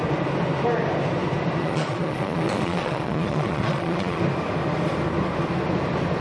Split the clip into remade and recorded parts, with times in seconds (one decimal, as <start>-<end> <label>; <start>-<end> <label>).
0.0-1.6 recorded; 1.6-4.2 remade; 4.2-6.2 recorded